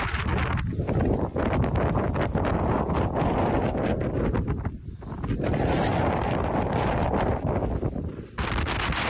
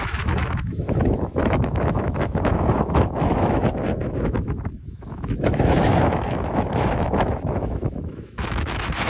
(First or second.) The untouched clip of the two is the first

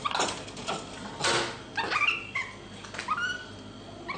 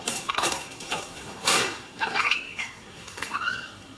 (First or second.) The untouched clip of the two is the first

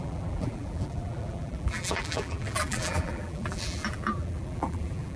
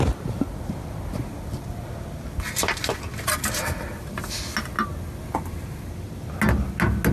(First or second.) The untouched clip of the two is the second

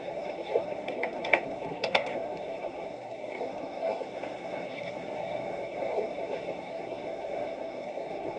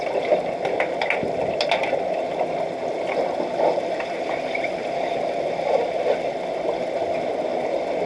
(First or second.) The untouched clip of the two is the second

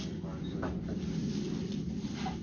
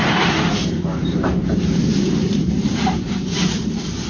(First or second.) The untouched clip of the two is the first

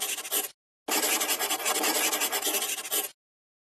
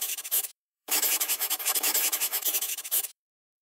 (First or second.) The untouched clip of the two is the first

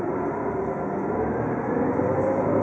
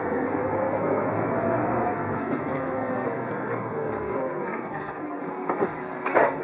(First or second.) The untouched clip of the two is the first